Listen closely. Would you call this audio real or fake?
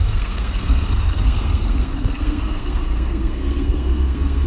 fake